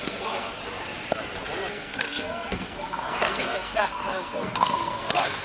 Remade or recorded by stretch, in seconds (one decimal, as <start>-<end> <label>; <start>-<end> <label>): 0.0-0.6 remade; 0.6-1.7 recorded; 1.7-5.4 remade